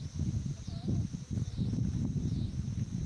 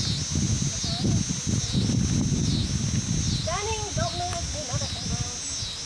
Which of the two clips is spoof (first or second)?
first